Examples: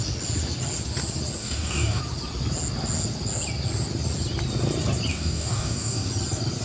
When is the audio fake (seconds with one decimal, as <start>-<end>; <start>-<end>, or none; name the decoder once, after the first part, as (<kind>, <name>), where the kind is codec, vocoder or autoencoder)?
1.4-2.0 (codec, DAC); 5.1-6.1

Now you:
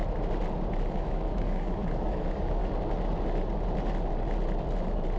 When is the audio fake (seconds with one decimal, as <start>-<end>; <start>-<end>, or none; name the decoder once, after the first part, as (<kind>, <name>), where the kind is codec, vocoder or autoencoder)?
0.9-2.6 (codec, DAC)

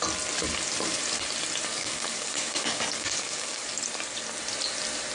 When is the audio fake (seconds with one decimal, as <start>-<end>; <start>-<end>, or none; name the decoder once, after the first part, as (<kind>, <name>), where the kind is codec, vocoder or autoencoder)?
1.7-3.6 (codec, DAC)

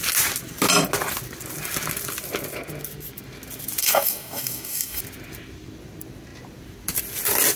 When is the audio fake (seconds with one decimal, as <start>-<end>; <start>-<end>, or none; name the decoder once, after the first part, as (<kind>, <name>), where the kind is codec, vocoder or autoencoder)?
3.8-5.0 (codec, DAC)